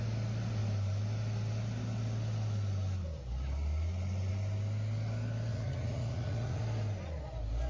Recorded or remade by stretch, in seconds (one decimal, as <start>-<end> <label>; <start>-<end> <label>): 0.0-5.5 recorded; 5.5-6.6 remade; 6.6-7.7 recorded